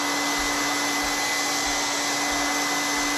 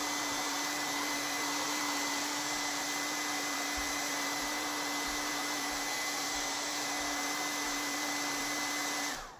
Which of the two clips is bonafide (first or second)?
first